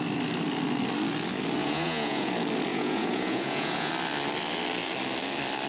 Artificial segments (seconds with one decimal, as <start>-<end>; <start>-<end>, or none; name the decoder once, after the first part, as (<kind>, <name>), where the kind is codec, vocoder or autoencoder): 1.6-2.3 (vocoder, Vocos); 2.7-3.9